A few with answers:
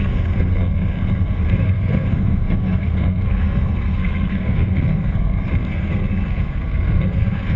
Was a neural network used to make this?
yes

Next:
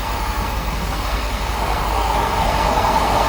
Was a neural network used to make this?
yes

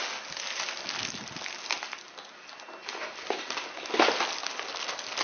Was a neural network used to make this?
no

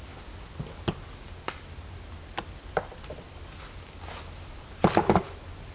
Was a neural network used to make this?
no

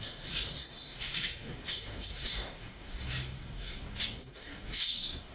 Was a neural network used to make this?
yes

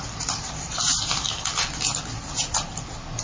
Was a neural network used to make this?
no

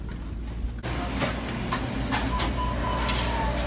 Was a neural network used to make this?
no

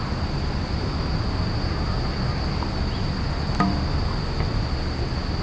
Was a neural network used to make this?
no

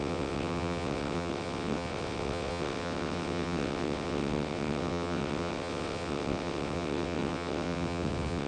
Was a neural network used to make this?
yes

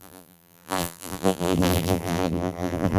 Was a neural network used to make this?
yes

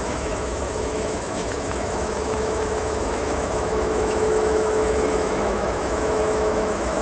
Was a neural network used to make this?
yes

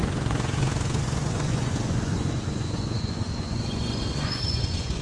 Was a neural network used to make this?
yes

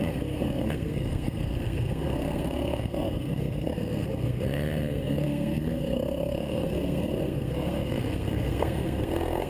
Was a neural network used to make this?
yes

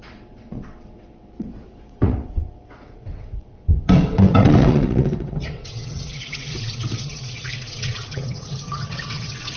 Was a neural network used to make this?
yes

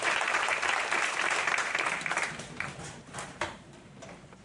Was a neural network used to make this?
yes